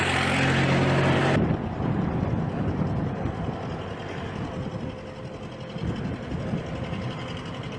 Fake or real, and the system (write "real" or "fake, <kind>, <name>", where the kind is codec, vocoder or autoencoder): real